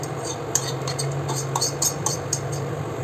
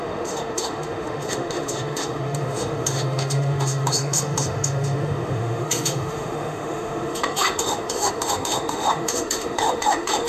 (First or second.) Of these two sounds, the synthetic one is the second